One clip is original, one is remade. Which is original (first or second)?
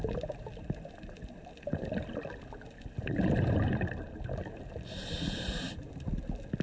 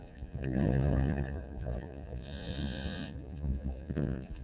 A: first